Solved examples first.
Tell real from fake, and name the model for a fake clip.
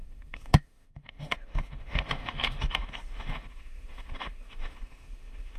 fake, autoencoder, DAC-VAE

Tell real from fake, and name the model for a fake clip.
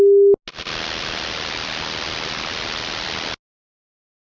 real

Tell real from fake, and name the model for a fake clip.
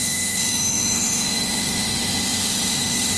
fake, autoencoder, DAC-VAE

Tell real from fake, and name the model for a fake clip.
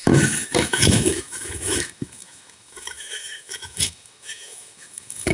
fake, autoencoder, DAC-VAE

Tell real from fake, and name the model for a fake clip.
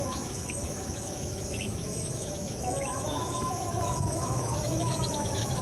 fake, autoencoder, DAC-VAE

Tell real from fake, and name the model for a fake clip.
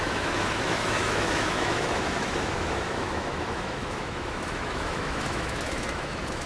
fake, autoencoder, DAC-VAE